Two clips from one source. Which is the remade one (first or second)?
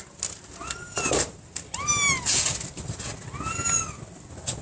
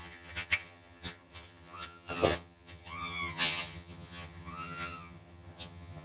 second